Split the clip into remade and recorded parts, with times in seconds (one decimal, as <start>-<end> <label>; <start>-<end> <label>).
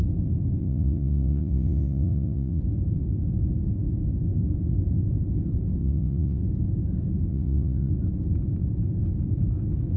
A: 0.0-0.6 recorded; 0.6-2.6 remade; 2.6-5.8 recorded; 5.8-6.4 remade; 6.4-7.3 recorded; 7.3-7.9 remade; 7.9-10.0 recorded